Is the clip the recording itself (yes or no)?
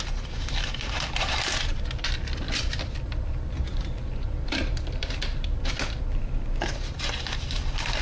no